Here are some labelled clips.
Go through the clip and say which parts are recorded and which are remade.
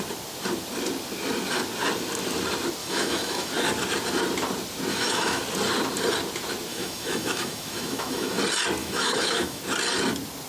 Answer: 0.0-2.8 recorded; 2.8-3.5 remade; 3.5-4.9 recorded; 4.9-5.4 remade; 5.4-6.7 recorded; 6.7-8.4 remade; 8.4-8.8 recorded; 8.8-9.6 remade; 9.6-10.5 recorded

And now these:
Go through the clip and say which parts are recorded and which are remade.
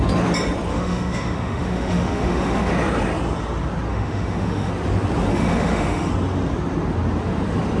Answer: 0.0-0.7 recorded; 0.7-2.7 remade; 2.7-3.9 recorded; 3.9-4.7 remade; 4.7-5.3 recorded; 5.3-6.1 remade; 6.1-7.8 recorded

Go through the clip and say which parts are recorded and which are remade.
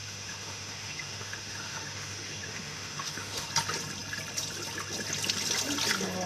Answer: 0.0-3.5 remade; 3.5-6.3 recorded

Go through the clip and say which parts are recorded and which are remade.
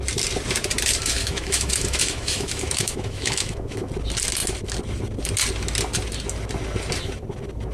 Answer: 0.0-1.2 recorded; 1.2-3.9 remade; 3.9-7.7 recorded